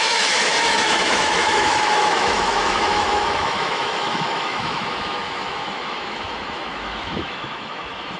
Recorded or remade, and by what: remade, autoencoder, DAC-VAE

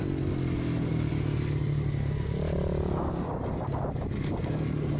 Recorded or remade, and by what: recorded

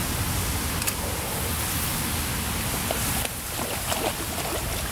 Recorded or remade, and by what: recorded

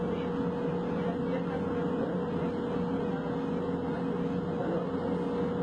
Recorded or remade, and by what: recorded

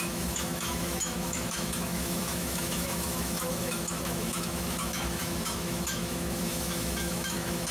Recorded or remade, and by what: remade, autoencoder, DAC-VAE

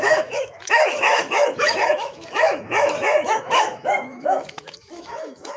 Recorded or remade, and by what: remade, autoencoder, DAC-VAE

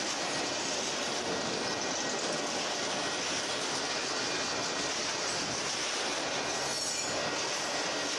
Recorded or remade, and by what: recorded